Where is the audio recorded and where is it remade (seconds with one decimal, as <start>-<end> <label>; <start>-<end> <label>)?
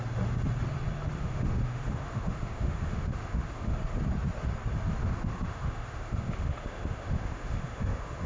0.0-1.1 recorded; 1.1-3.8 remade; 3.8-5.0 recorded; 5.0-8.3 remade